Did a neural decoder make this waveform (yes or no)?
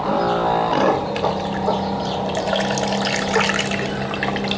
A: no